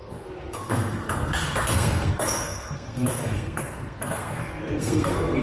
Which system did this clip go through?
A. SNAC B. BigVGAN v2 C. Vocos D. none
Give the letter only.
A